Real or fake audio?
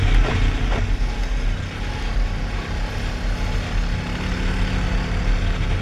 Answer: real